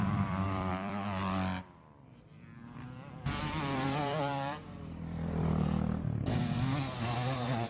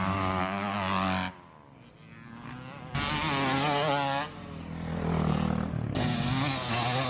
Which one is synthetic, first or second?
first